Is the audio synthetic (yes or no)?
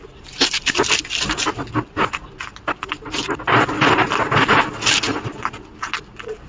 no